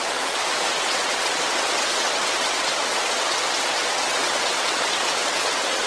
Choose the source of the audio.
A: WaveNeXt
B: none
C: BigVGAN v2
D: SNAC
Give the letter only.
A